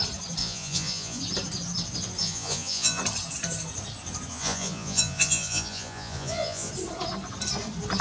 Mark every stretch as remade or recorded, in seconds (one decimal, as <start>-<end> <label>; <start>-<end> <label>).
0.0-0.4 recorded; 0.4-1.2 remade; 1.2-2.2 recorded; 2.2-3.0 remade; 3.0-4.3 recorded; 4.3-6.7 remade; 6.7-8.0 recorded